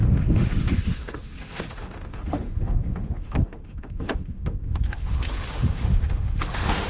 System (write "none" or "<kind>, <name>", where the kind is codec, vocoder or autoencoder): autoencoder, DAC-VAE